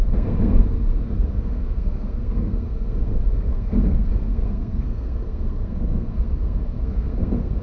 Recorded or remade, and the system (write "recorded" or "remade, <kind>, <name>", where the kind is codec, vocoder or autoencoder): remade, codec, SNAC